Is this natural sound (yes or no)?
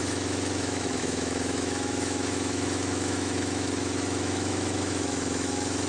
no